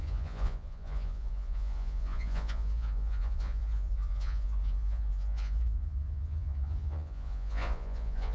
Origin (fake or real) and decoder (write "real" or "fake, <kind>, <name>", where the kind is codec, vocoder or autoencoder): fake, vocoder, Vocos